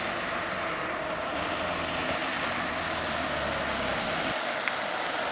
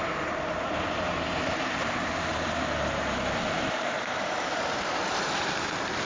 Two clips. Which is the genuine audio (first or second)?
first